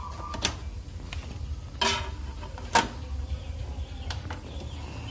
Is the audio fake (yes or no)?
no